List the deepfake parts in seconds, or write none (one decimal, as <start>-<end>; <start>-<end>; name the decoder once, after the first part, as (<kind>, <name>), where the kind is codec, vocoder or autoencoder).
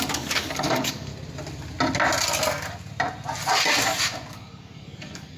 0.0-1.1 (codec, DAC); 4.3-5.4